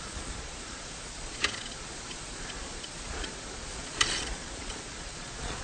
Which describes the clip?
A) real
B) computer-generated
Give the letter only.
B